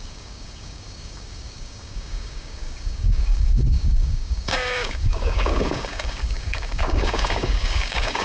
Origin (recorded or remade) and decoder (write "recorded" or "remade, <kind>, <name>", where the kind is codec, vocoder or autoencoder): remade, codec, DAC